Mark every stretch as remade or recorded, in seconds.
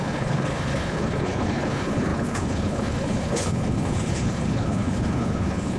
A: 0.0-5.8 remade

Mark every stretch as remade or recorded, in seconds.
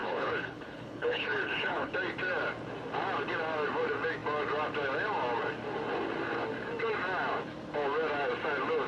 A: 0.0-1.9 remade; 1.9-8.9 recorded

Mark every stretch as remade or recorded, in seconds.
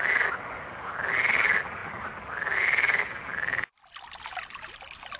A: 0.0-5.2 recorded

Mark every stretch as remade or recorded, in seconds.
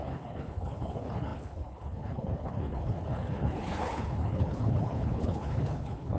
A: 0.0-6.2 remade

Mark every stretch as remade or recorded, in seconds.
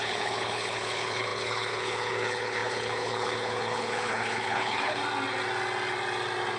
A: 0.0-5.0 remade; 5.0-6.6 recorded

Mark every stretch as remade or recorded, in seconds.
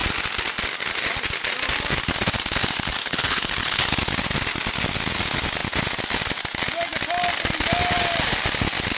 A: 0.0-3.0 recorded; 3.0-3.8 remade; 3.8-9.0 recorded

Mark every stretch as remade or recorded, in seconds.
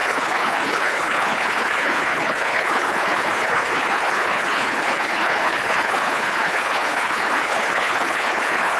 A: 0.0-8.8 remade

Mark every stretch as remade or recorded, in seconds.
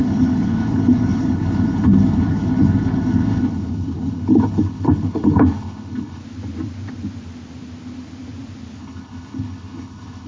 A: 0.0-6.2 remade; 6.2-8.8 recorded; 8.8-10.3 remade